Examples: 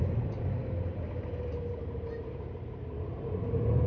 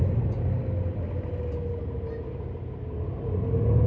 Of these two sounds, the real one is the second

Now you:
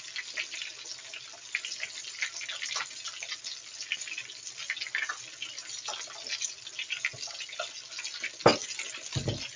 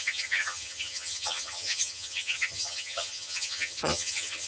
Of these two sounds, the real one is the first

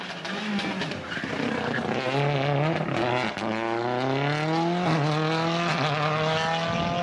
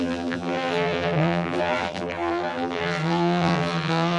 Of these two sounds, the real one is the first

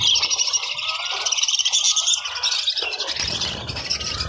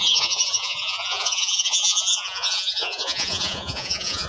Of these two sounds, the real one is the first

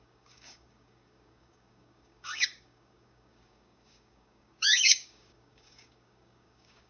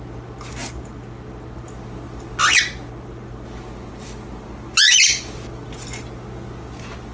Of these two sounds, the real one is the second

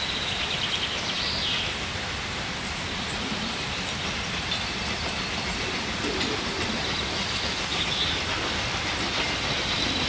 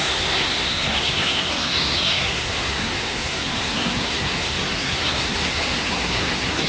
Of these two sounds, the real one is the first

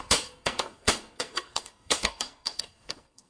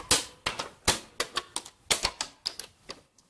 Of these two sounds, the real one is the second